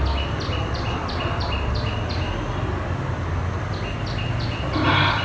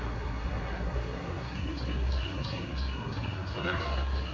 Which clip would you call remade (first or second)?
second